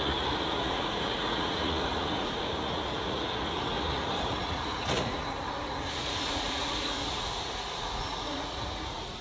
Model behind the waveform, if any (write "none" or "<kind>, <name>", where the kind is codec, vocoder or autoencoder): vocoder, Vocos